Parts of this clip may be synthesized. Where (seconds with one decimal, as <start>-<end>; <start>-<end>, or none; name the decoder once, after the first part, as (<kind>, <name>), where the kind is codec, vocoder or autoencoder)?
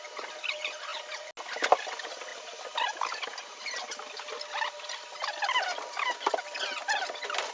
none